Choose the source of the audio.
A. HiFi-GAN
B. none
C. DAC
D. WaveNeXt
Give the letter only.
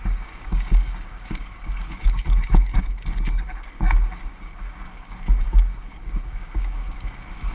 C